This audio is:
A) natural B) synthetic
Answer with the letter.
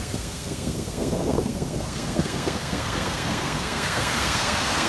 B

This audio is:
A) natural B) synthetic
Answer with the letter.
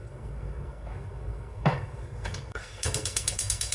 B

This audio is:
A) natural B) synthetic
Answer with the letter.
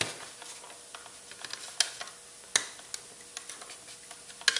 A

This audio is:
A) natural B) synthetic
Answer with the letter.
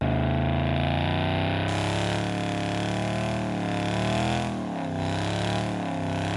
A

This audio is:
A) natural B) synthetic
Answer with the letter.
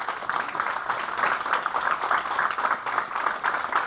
A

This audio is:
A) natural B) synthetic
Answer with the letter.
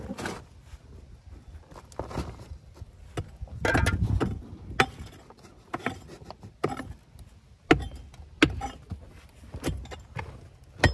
A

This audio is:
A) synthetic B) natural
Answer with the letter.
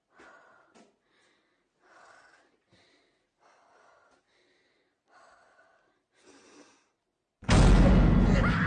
B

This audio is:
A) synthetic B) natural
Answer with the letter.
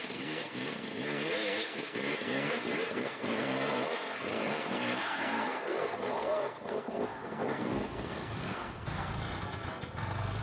A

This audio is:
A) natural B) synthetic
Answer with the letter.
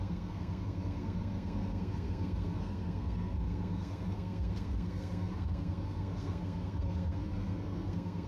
B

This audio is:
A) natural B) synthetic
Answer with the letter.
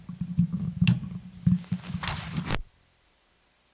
A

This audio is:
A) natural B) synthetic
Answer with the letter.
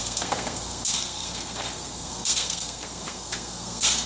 B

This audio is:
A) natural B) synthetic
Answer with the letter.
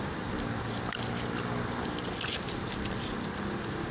A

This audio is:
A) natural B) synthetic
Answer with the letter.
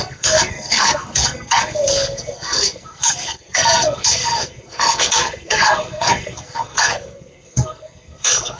B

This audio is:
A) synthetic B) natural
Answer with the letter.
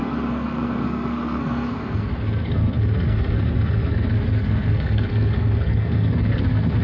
A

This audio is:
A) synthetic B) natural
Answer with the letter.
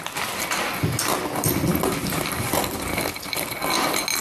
B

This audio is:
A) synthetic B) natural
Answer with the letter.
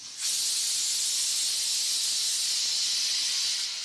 B